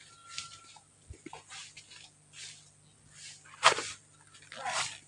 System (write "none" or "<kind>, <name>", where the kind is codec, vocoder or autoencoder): none